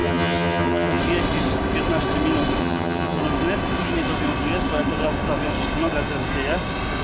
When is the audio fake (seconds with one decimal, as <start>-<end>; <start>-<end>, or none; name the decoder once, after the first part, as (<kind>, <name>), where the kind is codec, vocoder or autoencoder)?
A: 0.0-1.0 (vocoder, HiFi-GAN); 2.6-3.2